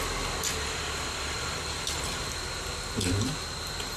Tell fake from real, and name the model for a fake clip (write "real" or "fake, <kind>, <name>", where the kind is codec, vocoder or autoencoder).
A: real